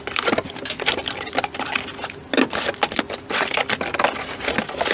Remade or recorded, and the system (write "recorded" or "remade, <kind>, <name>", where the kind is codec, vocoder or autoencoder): recorded